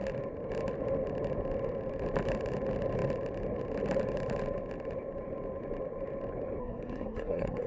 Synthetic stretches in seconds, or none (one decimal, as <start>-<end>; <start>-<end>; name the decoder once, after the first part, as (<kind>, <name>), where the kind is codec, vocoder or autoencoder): 6.6-7.7 (codec, SNAC)

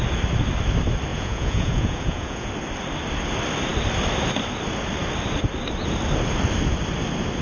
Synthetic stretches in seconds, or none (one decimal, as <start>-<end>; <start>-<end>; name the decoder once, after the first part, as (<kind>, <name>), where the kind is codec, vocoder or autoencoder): 1.1-2.5 (vocoder, Vocos)

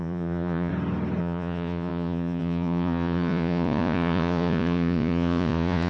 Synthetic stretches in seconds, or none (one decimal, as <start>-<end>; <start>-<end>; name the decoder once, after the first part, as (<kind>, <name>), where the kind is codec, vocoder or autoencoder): 0.0-0.7 (vocoder, Vocos); 1.2-5.9

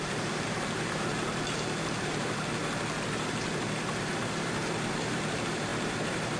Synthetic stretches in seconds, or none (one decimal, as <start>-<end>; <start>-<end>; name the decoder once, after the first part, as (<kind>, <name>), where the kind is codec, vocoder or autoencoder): 0.0-2.6 (vocoder, BigVGAN v2); 3.1-6.4

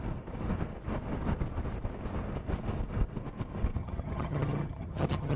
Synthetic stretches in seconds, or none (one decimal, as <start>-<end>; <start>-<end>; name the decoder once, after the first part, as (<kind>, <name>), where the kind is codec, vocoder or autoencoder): 3.8-5.4 (vocoder, HiFi-GAN)